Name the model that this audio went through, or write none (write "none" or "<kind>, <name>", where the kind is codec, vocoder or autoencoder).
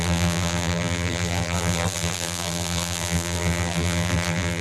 vocoder, BigVGAN v2